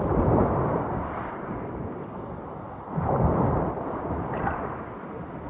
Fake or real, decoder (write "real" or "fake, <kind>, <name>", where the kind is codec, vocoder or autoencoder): real